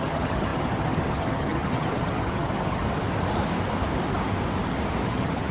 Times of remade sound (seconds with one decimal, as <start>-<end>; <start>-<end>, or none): 0.0-2.8; 5.0-5.5